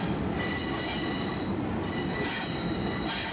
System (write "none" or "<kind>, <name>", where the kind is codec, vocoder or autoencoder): none